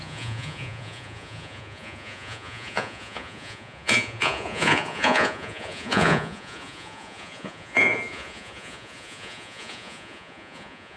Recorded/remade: remade